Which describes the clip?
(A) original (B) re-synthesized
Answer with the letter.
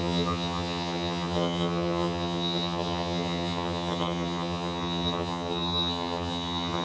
B